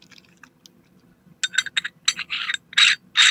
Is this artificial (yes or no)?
no